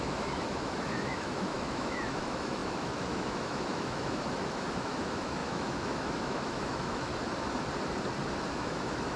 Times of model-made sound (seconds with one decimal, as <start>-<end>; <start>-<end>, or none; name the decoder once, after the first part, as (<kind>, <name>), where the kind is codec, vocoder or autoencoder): 0.0-7.1 (autoencoder, DAC-VAE); 8.5-9.2

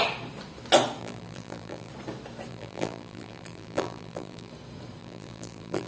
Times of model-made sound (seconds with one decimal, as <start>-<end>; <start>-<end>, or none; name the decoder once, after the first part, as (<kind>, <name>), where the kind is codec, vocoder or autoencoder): 1.0-1.9 (vocoder, BigVGAN v2); 2.5-4.5; 5.0-5.9

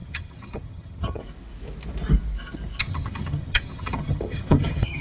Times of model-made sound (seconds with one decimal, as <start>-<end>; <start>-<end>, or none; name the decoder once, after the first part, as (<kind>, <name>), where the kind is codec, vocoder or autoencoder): 0.0-1.2 (vocoder, HiFi-GAN); 2.8-5.0

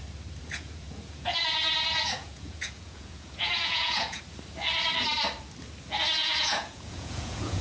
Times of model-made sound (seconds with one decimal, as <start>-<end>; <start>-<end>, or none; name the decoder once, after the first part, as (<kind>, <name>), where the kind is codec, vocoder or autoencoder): 0.4-4.2 (vocoder, Vocos); 6.2-7.6

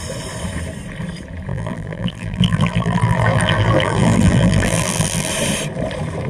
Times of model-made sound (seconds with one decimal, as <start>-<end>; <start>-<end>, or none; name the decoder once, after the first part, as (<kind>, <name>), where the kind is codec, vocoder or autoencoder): 1.5-5.3 (vocoder, BigVGAN v2)

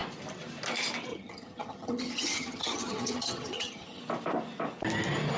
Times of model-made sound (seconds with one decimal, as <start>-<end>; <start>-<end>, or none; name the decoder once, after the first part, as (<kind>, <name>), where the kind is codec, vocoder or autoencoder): 1.1-4.0 (vocoder, HiFi-GAN)